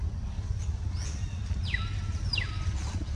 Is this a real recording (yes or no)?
yes